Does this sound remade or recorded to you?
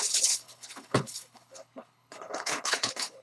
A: remade